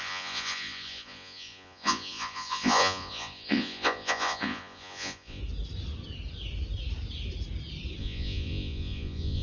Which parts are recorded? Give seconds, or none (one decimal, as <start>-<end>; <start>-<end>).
5.4-8.0